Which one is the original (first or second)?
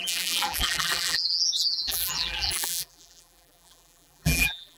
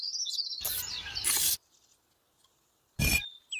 second